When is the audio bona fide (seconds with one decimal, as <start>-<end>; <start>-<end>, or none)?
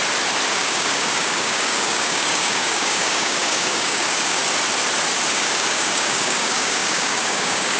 0.0-0.5; 4.4-5.3